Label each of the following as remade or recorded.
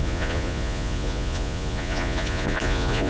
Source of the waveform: remade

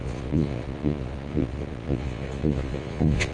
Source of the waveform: remade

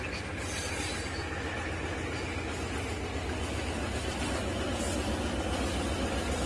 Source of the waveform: recorded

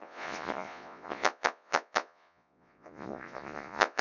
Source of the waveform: remade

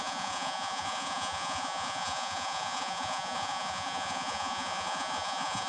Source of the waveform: remade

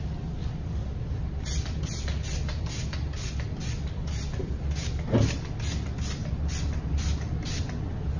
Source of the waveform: recorded